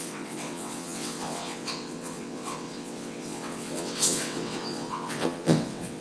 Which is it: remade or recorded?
remade